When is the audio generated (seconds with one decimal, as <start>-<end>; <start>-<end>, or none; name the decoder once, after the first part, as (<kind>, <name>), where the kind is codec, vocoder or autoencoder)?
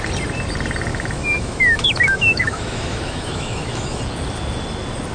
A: 0.9-4.0 (autoencoder, DAC-VAE)